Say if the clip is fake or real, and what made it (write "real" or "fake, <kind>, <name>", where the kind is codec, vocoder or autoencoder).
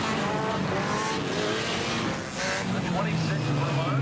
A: real